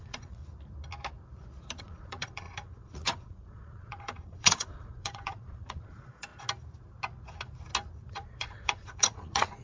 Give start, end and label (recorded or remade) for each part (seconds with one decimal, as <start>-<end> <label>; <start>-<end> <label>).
0.0-0.4 remade; 0.4-1.8 recorded; 1.8-6.3 remade; 6.3-8.1 recorded; 8.1-9.6 remade